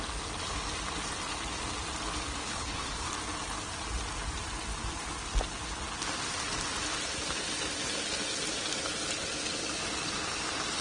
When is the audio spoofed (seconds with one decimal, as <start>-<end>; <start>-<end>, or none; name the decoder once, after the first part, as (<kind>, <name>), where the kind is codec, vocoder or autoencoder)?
2.4-3.1 (codec, HILCodec)